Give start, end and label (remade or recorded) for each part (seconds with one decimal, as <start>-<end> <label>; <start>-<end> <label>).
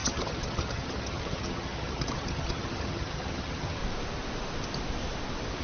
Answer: 0.0-3.8 remade; 3.8-5.6 recorded